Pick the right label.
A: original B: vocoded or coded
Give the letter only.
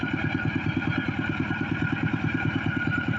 B